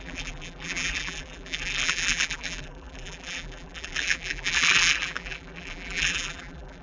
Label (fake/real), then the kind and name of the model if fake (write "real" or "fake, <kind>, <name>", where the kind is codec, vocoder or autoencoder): fake, vocoder, BigVGAN v2